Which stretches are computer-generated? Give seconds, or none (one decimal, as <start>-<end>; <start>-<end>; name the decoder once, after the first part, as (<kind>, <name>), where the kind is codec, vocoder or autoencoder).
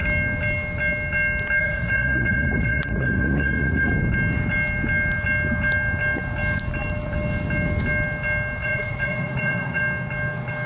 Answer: 1.6-3.9 (vocoder, Vocos); 8.6-9.8